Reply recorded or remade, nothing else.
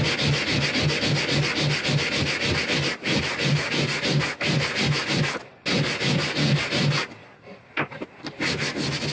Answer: recorded